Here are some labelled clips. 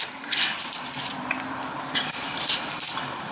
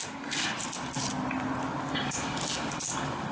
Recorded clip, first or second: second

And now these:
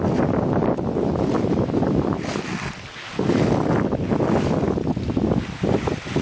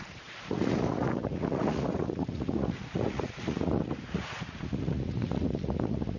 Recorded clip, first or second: first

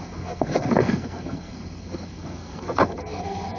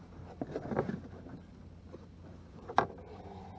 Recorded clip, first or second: second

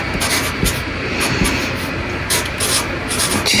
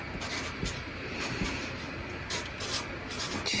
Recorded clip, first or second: first